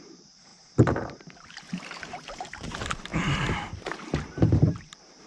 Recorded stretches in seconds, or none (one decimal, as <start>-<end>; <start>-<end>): none